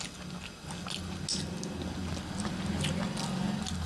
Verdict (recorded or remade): recorded